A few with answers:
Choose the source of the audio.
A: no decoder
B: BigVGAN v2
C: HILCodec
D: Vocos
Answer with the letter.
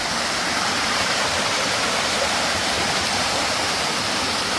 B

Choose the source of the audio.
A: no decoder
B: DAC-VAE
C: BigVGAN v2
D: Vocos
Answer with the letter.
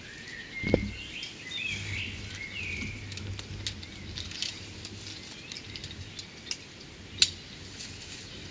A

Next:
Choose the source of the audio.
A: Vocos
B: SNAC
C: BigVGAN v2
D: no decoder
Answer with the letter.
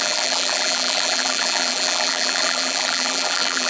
C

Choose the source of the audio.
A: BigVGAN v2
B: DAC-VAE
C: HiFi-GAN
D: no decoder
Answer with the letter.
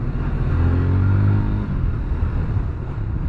D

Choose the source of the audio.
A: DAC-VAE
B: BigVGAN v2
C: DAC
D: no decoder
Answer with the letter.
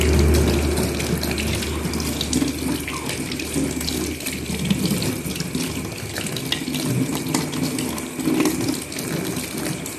D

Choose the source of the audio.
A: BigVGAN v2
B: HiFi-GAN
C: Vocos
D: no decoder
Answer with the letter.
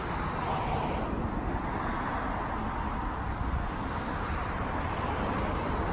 D